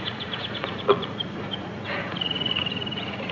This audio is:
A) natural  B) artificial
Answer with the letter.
B